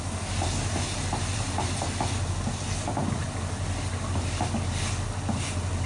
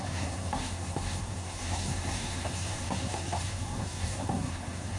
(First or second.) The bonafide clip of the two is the first